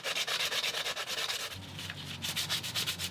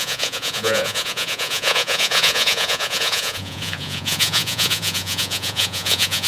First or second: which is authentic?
first